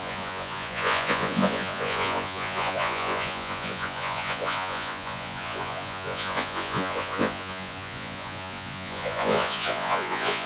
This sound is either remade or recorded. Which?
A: remade